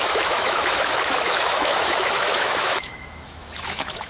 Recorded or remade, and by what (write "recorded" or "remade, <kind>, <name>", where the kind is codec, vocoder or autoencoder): remade, autoencoder, DAC-VAE